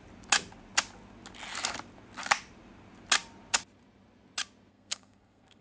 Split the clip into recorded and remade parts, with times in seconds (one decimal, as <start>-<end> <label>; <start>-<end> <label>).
0.0-4.7 recorded; 4.7-5.6 remade